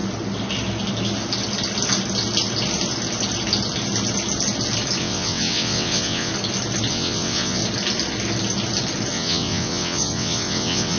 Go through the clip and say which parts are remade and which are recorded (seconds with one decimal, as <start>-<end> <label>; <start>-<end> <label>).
0.0-5.0 recorded; 5.0-6.3 remade; 6.3-6.9 recorded; 6.9-7.6 remade; 7.6-9.1 recorded; 9.1-11.0 remade